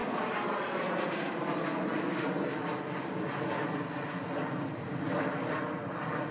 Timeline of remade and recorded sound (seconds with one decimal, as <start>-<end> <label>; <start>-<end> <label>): 0.0-6.3 recorded